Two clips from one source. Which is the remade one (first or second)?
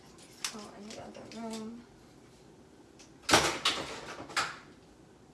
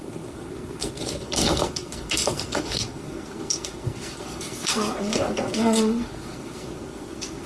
second